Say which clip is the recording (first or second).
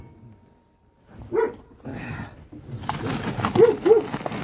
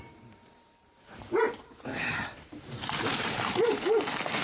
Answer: first